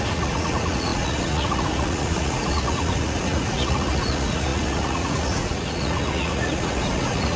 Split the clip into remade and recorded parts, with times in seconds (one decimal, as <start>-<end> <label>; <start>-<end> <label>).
0.0-7.4 remade